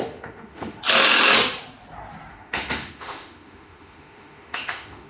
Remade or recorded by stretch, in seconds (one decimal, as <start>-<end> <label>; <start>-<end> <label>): 0.0-0.8 remade; 0.8-2.3 recorded; 2.3-5.1 remade